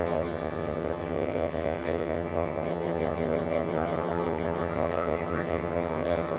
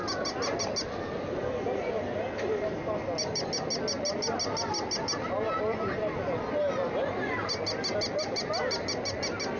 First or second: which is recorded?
second